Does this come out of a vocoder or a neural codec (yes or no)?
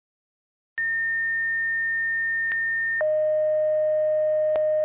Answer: no